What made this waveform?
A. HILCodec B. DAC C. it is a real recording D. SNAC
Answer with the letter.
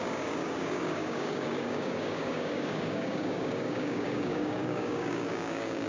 B